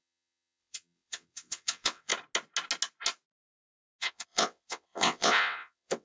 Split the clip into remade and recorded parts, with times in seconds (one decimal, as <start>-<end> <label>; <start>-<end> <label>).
0.0-2.1 remade; 2.1-4.0 recorded; 4.0-6.0 remade